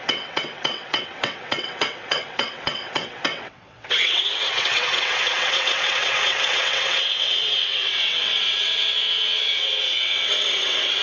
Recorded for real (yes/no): no